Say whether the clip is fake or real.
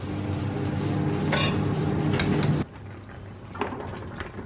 real